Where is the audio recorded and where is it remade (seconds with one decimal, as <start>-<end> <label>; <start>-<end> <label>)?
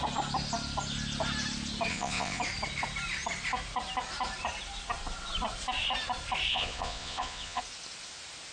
0.0-1.9 recorded; 1.9-2.4 remade; 2.4-6.5 recorded; 6.5-7.6 remade; 7.6-8.5 recorded